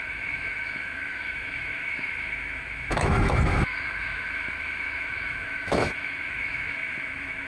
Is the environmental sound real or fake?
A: fake